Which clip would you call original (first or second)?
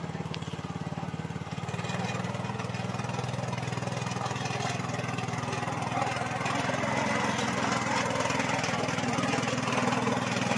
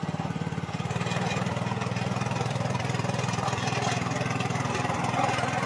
first